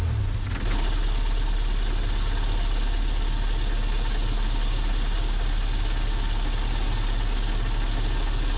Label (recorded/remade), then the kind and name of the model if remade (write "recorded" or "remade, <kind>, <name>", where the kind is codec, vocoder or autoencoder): recorded